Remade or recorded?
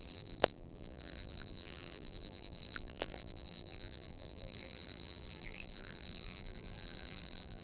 remade